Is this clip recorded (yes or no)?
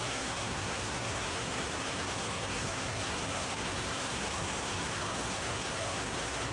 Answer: no